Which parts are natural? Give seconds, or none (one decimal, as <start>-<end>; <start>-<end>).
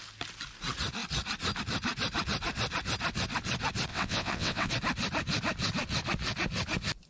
0.0-3.9; 4.7-7.1